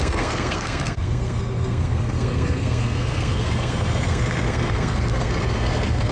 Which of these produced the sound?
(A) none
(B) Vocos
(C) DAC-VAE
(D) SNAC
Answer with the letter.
D